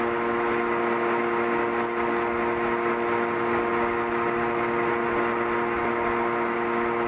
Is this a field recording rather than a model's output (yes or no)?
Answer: yes